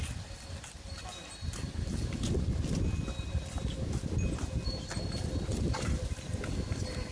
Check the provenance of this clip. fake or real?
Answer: real